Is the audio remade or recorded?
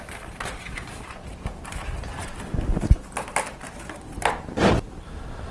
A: recorded